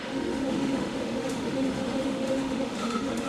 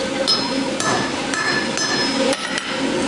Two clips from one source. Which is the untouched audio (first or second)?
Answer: second